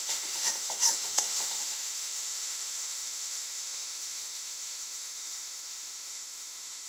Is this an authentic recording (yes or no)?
no